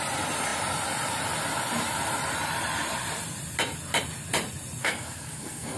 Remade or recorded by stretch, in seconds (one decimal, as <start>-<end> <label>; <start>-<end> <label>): 0.0-4.8 recorded; 4.8-5.8 remade